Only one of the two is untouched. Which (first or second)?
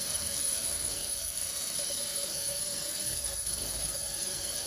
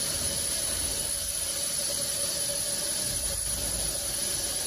second